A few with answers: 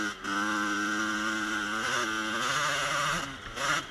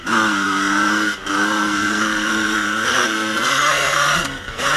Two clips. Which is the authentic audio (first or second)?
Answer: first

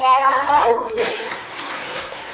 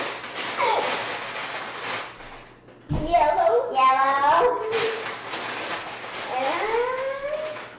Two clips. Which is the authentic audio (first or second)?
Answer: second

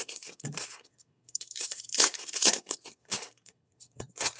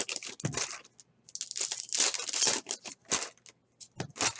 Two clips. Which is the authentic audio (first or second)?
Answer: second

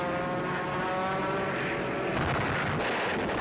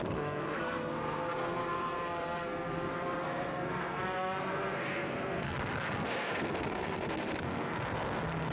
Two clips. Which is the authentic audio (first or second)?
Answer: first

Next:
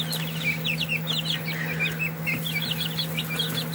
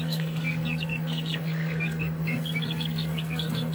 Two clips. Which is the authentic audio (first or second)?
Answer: first